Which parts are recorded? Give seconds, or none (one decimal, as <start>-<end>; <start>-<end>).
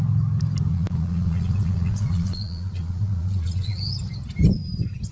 0.0-0.7; 3.8-5.1